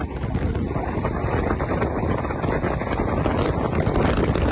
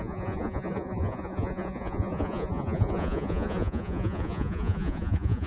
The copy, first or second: second